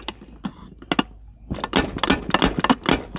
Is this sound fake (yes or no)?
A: no